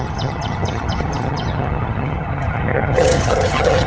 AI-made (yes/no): yes